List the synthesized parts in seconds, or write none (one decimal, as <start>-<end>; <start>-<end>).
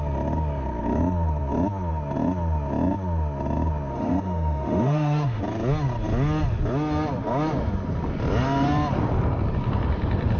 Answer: 3.9-5.4